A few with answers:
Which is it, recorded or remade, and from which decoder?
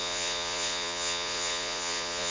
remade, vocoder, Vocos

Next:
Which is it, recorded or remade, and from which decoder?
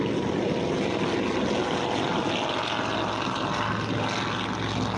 recorded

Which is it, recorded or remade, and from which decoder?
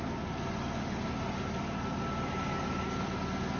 recorded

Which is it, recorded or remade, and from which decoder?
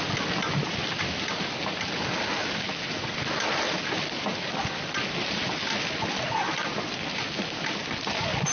recorded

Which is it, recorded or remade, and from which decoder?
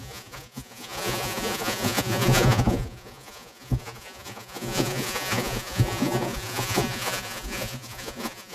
remade, vocoder, Vocos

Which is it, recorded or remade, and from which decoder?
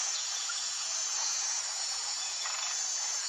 remade, vocoder, Vocos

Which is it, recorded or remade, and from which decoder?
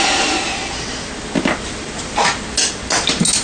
recorded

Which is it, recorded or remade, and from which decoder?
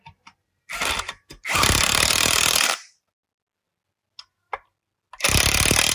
recorded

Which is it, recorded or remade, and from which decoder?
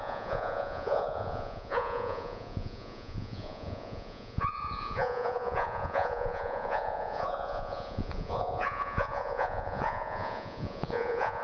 remade, vocoder, Vocos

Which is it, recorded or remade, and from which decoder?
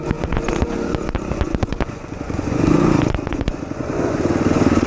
remade, vocoder, Vocos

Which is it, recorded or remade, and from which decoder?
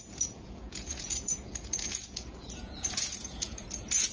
remade, vocoder, Vocos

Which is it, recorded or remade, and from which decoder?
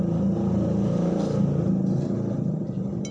recorded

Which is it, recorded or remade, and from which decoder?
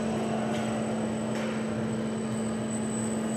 recorded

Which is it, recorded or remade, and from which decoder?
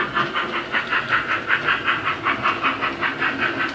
recorded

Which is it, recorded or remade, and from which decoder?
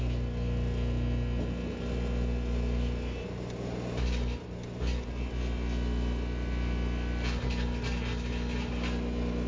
recorded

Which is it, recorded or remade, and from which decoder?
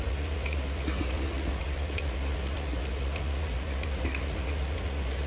remade, vocoder, Vocos